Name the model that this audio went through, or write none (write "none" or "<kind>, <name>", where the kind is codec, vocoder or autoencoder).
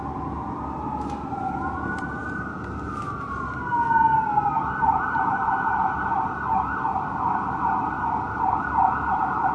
none